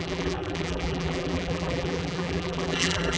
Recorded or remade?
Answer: remade